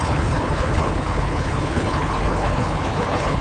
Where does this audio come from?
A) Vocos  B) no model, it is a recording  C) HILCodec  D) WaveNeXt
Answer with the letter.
C